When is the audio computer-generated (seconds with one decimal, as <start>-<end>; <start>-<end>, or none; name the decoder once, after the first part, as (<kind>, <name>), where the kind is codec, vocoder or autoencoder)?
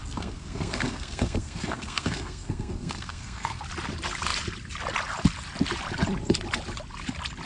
0.0-3.6 (codec, SNAC)